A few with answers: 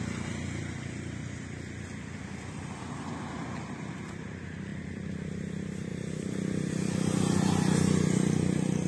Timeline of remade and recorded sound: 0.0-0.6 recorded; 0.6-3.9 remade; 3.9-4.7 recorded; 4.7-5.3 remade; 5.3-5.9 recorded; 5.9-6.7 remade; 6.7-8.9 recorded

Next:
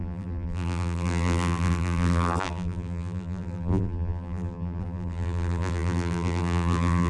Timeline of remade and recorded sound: 0.0-7.1 remade

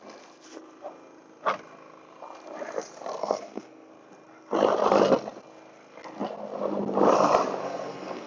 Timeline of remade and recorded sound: 0.0-3.2 recorded; 3.2-3.9 remade; 3.9-7.6 recorded; 7.6-8.3 remade